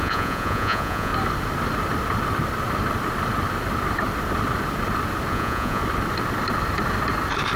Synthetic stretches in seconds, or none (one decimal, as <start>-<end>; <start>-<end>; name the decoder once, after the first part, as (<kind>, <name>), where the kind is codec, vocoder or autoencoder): 0.0-1.1 (vocoder, Vocos); 5.3-5.8